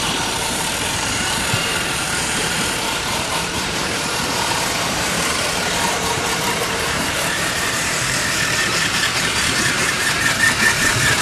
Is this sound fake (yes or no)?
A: yes